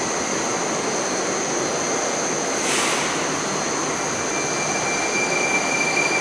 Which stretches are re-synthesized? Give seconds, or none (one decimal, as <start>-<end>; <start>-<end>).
none